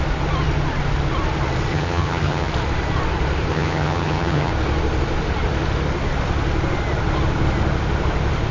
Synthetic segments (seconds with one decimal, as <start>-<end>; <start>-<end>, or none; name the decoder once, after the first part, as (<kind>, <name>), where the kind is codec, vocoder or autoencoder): 1.7-2.5 (vocoder, HiFi-GAN); 3.5-4.5